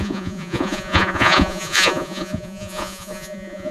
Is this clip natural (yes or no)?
no